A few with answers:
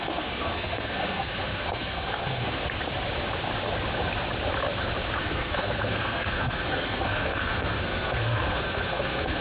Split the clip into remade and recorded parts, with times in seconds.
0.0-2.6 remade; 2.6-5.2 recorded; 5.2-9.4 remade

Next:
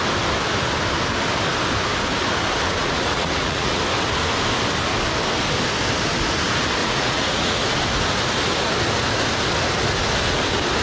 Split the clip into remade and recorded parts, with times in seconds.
0.0-2.8 recorded; 2.8-3.8 remade; 3.8-6.8 recorded; 6.8-7.6 remade; 7.6-10.8 recorded

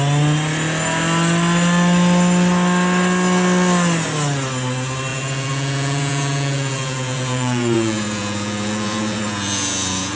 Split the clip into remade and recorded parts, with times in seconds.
0.0-5.1 recorded; 5.1-10.2 remade